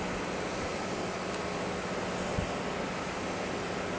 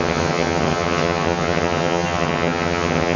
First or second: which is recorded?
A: first